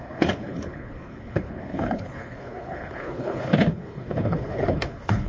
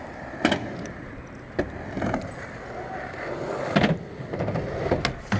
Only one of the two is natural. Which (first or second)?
second